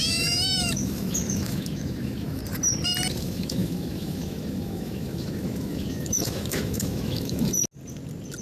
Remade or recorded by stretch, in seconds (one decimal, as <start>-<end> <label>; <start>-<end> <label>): 0.0-2.4 remade; 2.4-3.2 recorded; 3.2-7.6 remade; 7.6-8.4 recorded